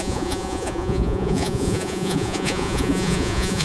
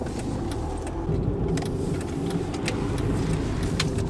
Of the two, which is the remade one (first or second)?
first